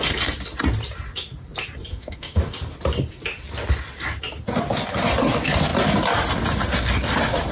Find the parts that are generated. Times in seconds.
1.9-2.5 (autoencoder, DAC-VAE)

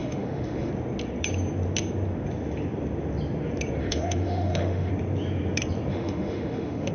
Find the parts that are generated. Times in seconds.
0.0-0.7 (autoencoder, DAC-VAE); 3.8-4.9; 5.9-6.9

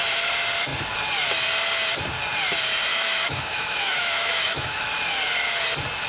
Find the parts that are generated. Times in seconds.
2.9-4.8 (autoencoder, DAC-VAE)